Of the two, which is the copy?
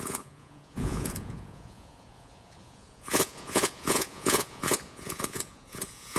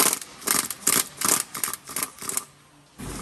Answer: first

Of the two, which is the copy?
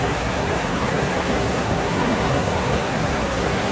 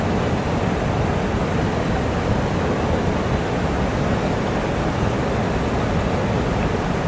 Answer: first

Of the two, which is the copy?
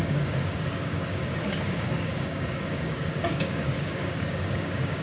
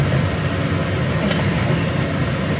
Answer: first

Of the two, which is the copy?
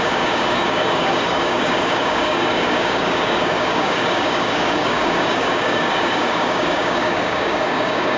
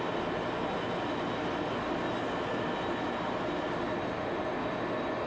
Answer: first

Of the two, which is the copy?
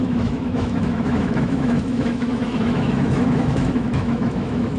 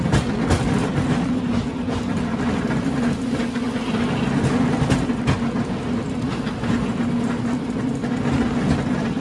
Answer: first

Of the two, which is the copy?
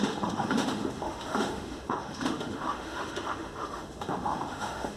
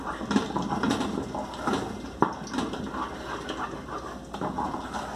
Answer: first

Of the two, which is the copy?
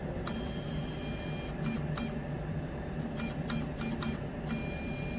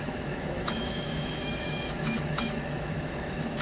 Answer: second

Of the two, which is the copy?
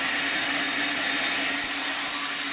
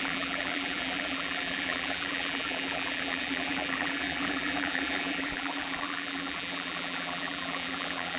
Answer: second